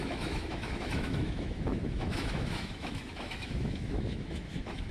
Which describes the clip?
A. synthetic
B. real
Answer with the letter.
A